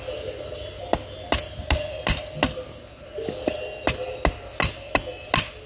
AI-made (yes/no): no